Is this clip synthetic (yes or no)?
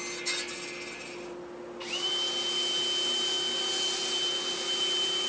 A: no